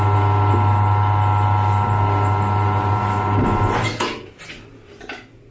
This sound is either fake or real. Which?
real